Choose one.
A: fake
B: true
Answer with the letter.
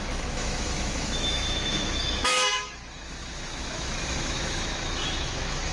A